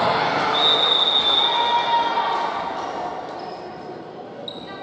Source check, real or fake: real